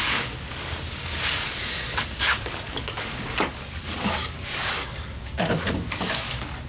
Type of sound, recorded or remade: remade